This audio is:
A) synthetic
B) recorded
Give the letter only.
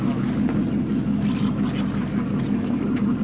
B